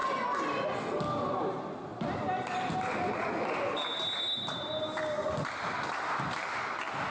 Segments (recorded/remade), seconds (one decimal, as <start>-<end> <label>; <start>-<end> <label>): 0.0-7.1 recorded